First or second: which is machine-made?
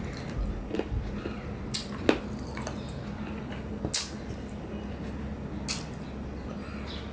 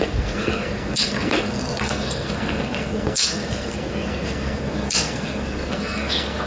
second